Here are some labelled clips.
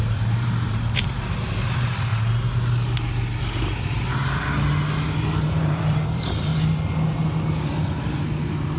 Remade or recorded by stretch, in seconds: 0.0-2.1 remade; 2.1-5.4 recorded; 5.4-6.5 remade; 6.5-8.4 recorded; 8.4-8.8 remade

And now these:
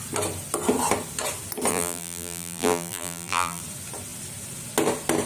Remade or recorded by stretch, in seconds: 0.0-1.7 recorded; 1.7-3.6 remade; 3.6-5.3 recorded

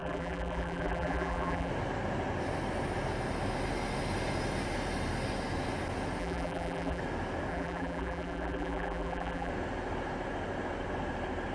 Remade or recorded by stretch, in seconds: 0.0-1.7 remade; 1.7-6.2 recorded; 6.2-7.0 remade; 7.0-7.5 recorded; 7.5-9.5 remade; 9.5-11.5 recorded

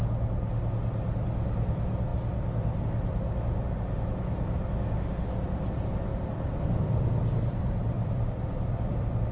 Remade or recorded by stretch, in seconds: 0.0-6.1 recorded; 6.1-9.3 remade

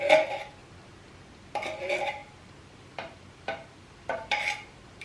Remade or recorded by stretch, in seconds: 0.0-0.6 remade; 0.6-1.8 recorded; 1.8-5.0 remade

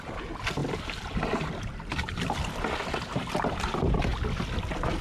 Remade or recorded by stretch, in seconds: 0.0-0.6 remade; 0.6-3.0 recorded; 3.0-4.1 remade; 4.1-5.0 recorded

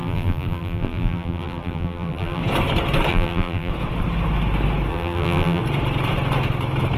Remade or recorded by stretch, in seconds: 0.0-2.4 remade; 2.4-3.1 recorded; 3.1-3.7 remade; 3.7-4.9 recorded; 4.9-5.6 remade; 5.6-7.0 recorded